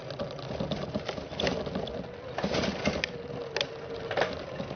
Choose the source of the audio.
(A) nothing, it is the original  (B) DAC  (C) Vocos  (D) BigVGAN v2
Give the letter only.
A